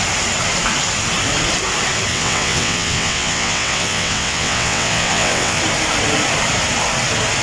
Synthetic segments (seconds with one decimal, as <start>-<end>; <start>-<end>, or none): 2.1-5.6

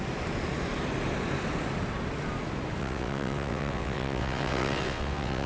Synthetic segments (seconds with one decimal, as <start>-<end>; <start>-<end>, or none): 2.8-5.5

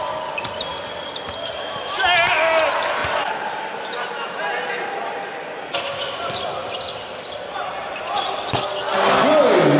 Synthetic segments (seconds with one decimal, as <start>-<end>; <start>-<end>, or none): none

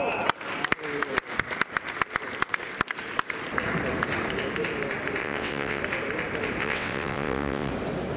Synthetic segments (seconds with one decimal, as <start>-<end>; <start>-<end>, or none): 5.2-5.8; 6.6-7.7

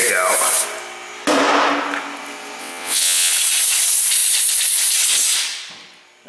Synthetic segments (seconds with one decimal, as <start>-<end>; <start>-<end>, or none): 2.6-3.3

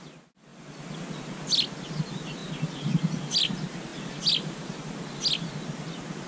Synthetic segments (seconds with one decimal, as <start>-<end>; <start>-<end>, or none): none

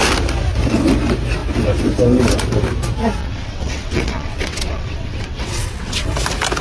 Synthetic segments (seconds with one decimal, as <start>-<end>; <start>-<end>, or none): 3.2-6.1